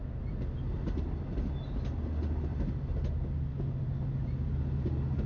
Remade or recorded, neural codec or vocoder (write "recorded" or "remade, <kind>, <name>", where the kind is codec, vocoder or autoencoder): recorded